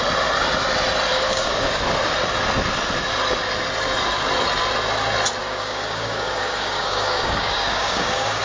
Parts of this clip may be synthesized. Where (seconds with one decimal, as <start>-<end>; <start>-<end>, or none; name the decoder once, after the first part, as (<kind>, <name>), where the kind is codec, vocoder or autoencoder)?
1.1-1.8 (codec, DAC); 5.4-8.4

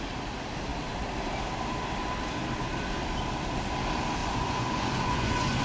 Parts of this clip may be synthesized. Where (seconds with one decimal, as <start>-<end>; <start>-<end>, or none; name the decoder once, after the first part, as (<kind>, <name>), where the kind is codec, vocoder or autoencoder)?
4.2-5.6 (vocoder, Vocos)